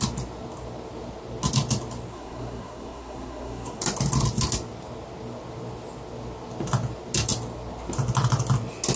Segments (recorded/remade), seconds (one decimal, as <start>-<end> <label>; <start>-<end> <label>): 0.0-2.1 recorded; 2.1-3.8 remade; 3.8-9.0 recorded